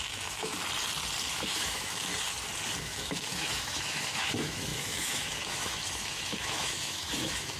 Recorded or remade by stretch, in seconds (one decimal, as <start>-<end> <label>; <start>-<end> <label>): 0.0-0.5 remade; 0.5-1.3 recorded; 1.3-2.1 remade; 2.1-2.8 recorded; 2.8-7.6 remade